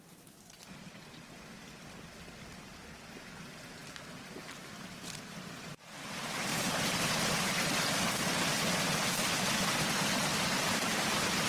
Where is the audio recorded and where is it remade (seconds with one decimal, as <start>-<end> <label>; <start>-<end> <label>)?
0.0-6.5 recorded; 6.5-7.9 remade; 7.9-10.3 recorded; 10.3-11.5 remade